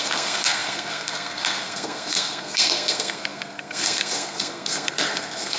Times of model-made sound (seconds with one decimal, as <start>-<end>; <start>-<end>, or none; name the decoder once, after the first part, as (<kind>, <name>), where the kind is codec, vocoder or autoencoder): 0.0-5.6 (codec, SNAC)

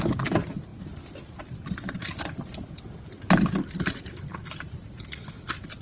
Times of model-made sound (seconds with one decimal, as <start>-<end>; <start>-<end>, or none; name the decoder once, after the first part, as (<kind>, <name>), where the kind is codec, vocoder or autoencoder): none